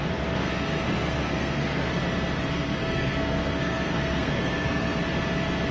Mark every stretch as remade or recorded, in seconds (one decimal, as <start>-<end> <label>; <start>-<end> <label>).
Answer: 0.0-1.9 remade; 1.9-2.5 recorded; 2.5-5.0 remade; 5.0-5.7 recorded